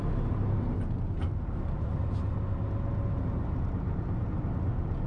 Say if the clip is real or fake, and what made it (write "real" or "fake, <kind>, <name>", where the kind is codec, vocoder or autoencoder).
real